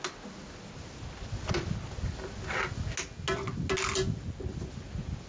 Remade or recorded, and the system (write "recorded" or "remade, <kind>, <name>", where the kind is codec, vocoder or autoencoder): recorded